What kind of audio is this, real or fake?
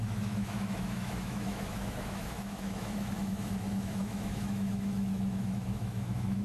fake